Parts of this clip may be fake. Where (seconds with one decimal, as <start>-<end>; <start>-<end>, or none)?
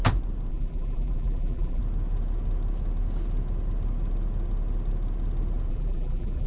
0.5-1.8; 5.7-6.5